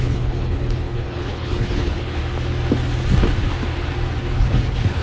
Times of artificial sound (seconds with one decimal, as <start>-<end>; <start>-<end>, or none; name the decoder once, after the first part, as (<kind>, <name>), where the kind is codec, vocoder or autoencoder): 0.0-2.2 (codec, HILCodec); 4.2-5.0